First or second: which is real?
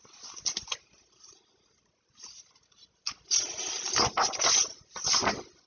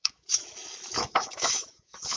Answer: first